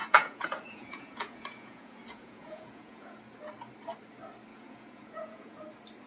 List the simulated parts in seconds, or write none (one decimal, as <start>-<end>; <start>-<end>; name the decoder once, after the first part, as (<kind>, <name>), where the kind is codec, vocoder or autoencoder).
0.0-3.2 (vocoder, Vocos); 4.5-5.6